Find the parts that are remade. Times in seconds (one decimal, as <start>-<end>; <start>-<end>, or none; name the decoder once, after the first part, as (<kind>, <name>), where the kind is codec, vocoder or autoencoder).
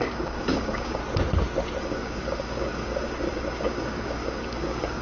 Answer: 0.0-1.0 (codec, DAC); 1.8-5.0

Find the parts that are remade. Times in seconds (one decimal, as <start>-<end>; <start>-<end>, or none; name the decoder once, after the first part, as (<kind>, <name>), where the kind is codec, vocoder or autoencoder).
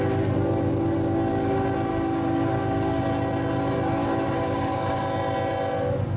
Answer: 1.9-3.0 (codec, DAC); 4.0-5.0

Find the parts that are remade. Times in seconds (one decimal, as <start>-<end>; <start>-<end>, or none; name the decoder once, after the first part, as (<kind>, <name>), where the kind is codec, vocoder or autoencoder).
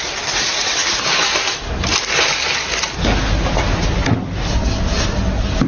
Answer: none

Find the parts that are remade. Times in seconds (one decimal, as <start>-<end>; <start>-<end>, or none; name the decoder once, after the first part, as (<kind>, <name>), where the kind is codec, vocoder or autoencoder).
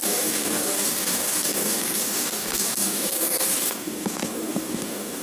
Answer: 0.0-5.2 (codec, DAC)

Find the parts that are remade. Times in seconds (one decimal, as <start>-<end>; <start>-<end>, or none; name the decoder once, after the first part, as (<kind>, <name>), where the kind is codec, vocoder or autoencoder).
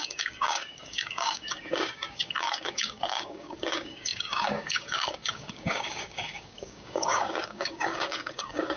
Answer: 0.0-8.8 (codec, DAC)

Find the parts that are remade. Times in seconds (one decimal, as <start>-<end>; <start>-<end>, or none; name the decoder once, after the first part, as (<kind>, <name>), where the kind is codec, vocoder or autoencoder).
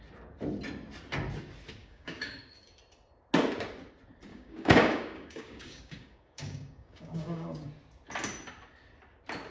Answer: 1.8-2.8 (codec, DAC); 4.3-7.7